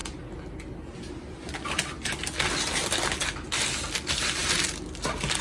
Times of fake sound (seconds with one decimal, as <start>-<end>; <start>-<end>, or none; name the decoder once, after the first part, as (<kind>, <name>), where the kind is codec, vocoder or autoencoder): none